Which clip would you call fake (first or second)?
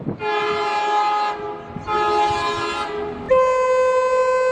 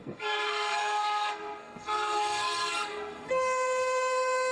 second